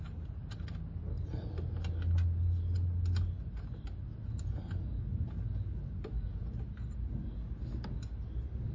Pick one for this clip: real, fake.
real